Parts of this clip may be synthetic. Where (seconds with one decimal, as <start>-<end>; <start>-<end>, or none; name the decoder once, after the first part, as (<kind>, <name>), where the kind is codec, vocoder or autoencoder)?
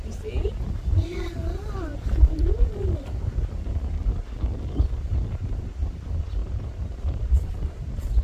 1.9-2.5 (vocoder, BigVGAN v2); 6.4-8.2